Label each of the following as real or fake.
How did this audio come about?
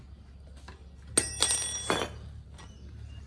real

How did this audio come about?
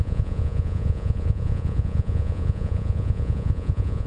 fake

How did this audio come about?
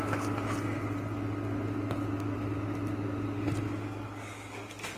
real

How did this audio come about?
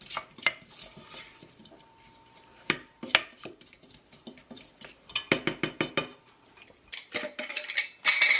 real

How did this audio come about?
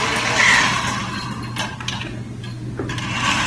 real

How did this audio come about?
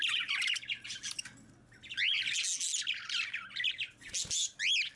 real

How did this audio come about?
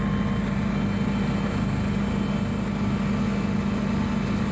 real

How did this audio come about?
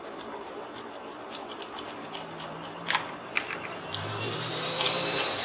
fake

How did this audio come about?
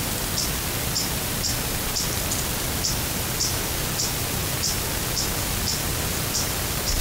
real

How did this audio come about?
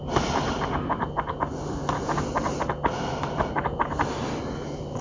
real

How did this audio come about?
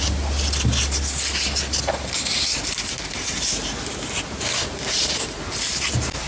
real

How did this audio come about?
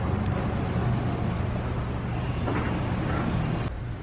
real